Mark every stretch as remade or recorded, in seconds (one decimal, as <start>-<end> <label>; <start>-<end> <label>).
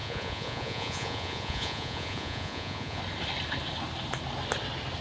0.0-3.0 remade; 3.0-5.0 recorded